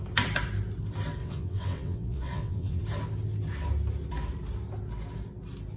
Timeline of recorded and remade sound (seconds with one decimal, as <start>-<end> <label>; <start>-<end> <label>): 0.0-1.2 recorded; 1.2-2.8 remade; 2.8-5.8 recorded